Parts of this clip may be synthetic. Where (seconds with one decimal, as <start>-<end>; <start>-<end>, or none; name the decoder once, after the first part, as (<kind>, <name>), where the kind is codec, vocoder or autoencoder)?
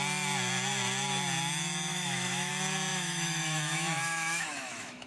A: 1.9-2.5 (autoencoder, DAC-VAE); 2.9-5.1